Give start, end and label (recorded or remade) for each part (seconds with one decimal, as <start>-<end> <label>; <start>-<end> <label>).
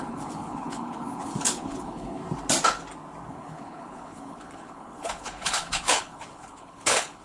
0.0-2.2 remade; 2.2-3.3 recorded; 3.3-7.2 remade